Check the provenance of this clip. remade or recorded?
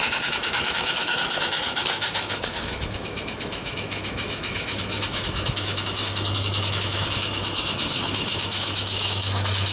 remade